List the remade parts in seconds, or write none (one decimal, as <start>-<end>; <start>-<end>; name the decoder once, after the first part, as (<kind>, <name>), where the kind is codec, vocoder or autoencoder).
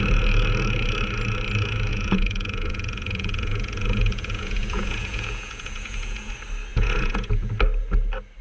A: 1.9-6.3 (vocoder, Vocos); 6.7-7.5